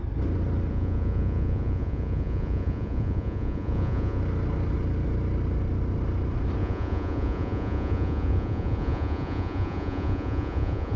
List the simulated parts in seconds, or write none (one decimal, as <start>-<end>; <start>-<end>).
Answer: 0.7-4.2; 6.6-11.0